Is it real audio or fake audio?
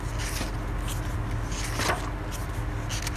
real